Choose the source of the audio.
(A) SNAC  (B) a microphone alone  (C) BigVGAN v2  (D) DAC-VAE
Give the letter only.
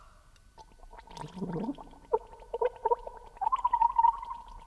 B